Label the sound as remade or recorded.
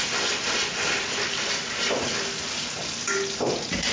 recorded